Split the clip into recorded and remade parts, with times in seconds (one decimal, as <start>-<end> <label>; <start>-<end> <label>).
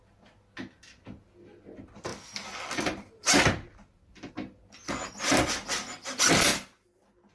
0.0-7.3 recorded